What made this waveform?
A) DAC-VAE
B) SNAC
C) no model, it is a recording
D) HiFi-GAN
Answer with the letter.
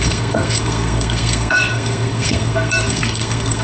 B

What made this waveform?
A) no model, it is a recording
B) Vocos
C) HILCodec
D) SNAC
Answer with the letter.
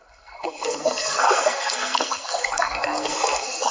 D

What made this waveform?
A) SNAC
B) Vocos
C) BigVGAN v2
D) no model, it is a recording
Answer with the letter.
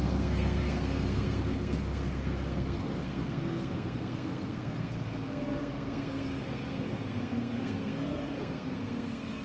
A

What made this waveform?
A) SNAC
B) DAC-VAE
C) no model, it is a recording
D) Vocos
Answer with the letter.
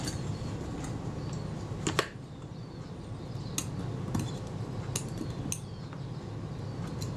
C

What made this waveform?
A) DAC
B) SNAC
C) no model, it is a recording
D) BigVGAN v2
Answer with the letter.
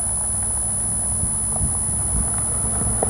C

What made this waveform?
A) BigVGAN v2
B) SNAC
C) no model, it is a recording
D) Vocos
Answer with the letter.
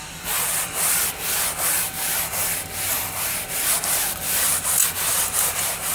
C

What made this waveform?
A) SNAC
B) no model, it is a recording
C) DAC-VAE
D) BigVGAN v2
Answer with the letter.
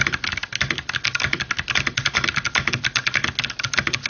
B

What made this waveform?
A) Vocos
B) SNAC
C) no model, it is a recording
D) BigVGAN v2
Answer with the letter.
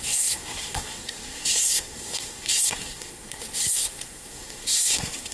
B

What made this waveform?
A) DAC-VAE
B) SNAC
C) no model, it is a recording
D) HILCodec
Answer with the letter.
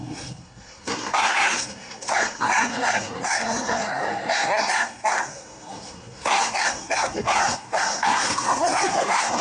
B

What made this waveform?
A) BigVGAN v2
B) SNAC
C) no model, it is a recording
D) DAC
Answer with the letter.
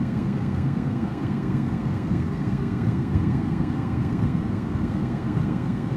B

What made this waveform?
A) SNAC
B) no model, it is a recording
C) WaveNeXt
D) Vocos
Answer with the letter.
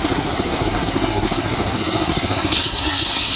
A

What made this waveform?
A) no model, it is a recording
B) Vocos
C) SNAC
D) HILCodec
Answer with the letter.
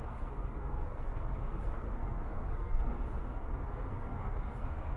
C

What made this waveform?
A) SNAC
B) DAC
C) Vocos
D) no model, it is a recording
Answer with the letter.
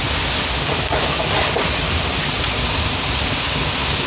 D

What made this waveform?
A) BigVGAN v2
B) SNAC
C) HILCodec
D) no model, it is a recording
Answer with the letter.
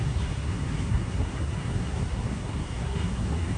B